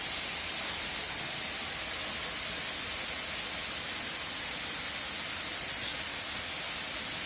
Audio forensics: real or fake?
real